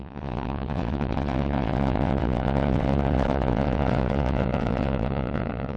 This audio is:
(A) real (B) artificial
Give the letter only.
B